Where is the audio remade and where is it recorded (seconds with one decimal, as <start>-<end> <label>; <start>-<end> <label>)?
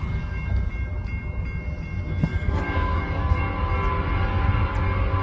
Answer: 0.0-2.3 recorded; 2.3-3.4 remade; 3.4-5.2 recorded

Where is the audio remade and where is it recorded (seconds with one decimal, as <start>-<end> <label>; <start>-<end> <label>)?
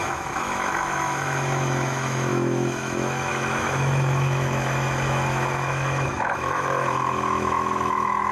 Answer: 0.0-8.3 remade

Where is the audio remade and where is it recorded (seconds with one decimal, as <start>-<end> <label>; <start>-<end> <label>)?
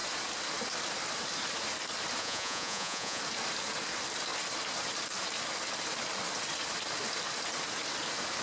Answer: 0.0-2.2 recorded; 2.2-3.2 remade; 3.2-8.4 recorded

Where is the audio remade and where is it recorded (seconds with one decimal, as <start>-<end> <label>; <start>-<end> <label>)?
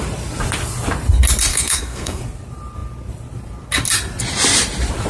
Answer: 0.0-1.5 recorded; 1.5-2.2 remade; 2.2-5.1 recorded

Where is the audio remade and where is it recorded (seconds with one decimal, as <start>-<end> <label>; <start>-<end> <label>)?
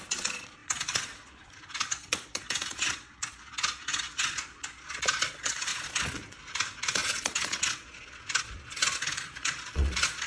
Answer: 0.0-10.3 remade